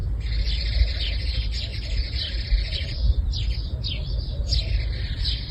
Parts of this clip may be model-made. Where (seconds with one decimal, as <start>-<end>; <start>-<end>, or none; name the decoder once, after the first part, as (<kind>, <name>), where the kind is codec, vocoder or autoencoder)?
none